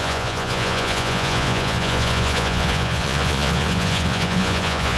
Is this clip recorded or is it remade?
remade